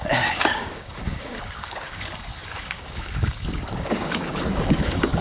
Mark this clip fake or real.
fake